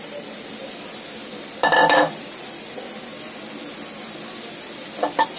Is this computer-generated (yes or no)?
no